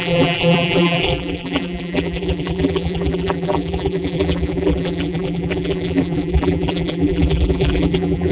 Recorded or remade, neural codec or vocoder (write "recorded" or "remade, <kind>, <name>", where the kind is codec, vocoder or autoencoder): remade, vocoder, BigVGAN v2